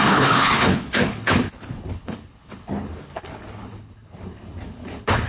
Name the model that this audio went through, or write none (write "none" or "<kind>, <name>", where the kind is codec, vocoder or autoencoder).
codec, HILCodec